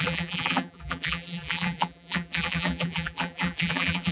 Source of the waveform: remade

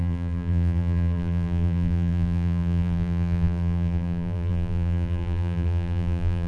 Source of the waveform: remade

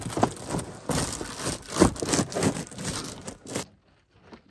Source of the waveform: recorded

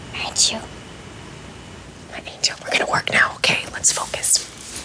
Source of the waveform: recorded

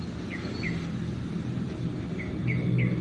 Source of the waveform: recorded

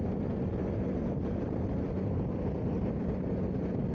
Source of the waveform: recorded